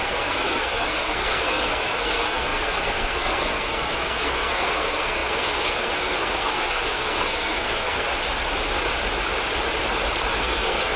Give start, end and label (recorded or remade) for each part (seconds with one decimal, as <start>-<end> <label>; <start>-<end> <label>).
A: 0.0-8.1 remade; 8.1-10.4 recorded; 10.4-11.0 remade